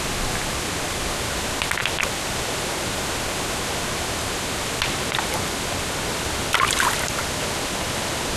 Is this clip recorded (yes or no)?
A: yes